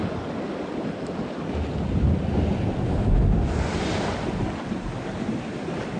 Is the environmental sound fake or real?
real